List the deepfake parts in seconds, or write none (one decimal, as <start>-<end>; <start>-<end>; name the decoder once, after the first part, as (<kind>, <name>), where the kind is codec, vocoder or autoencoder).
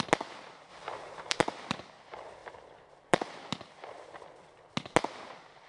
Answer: 0.7-1.4 (vocoder, BigVGAN v2); 2.4-3.3